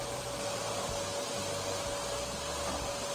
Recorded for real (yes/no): yes